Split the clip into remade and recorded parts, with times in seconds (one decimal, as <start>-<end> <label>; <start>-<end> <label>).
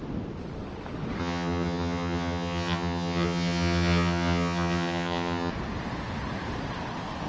0.0-1.2 recorded; 1.2-5.5 remade; 5.5-7.3 recorded